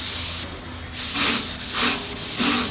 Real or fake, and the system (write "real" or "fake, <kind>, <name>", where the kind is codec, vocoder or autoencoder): real